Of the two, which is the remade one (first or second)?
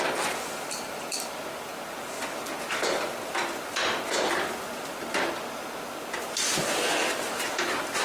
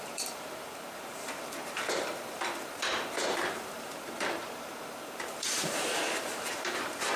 second